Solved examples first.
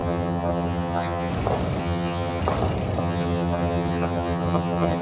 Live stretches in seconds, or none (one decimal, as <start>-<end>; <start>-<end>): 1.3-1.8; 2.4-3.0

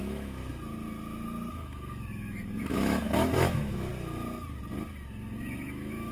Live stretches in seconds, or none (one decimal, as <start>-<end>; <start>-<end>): 0.4-1.5; 3.9-5.2

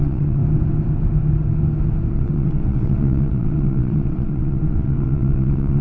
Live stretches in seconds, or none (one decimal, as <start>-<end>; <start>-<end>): 0.4-2.1